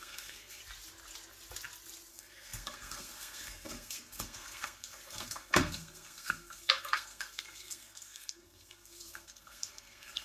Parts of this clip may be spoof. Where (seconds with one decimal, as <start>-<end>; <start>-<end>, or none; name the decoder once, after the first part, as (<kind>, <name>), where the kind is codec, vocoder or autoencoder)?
0.0-0.6 (codec, SNAC); 2.1-10.2